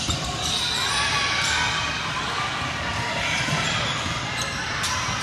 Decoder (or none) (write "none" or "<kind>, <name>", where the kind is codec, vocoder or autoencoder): vocoder, BigVGAN v2